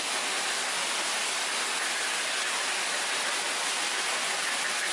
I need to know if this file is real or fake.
real